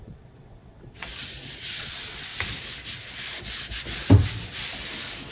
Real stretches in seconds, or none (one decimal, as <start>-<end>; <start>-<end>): 1.1-1.6; 2.3-5.3